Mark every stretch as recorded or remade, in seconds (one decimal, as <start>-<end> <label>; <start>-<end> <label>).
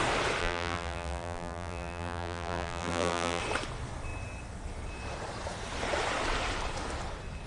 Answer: 0.0-0.4 recorded; 0.4-3.4 remade; 3.4-7.5 recorded